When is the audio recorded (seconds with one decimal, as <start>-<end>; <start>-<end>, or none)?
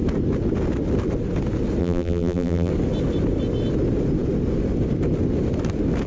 0.0-1.8; 2.7-6.1